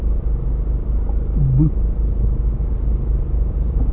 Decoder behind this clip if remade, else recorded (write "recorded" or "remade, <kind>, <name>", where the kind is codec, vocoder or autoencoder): recorded